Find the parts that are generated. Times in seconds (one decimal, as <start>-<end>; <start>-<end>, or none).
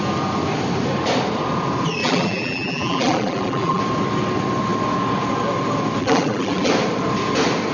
2.0-3.8; 6.0-6.7